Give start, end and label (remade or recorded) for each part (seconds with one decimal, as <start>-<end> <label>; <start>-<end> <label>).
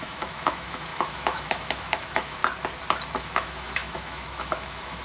0.0-2.4 remade; 2.4-3.2 recorded; 3.2-5.0 remade